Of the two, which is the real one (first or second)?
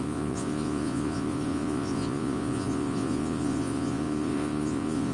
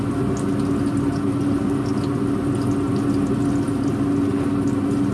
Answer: second